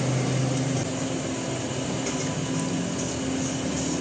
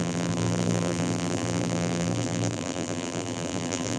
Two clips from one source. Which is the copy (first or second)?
second